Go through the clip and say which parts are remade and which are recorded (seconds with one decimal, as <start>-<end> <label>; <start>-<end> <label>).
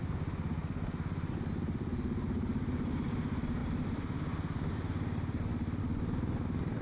0.0-0.6 recorded; 0.6-1.9 remade; 1.9-6.8 recorded